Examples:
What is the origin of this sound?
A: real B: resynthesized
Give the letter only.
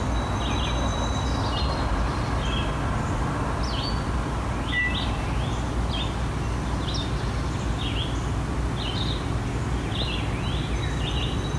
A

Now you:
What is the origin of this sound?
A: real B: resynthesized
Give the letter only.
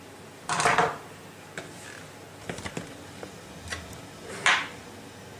A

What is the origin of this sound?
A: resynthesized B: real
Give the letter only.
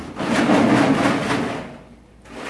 B